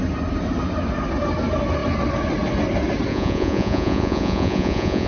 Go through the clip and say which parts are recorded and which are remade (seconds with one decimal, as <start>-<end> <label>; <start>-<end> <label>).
0.0-3.1 recorded; 3.1-5.1 remade